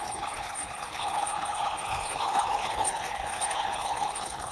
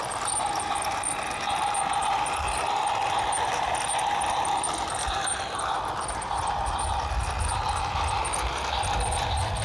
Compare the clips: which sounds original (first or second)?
second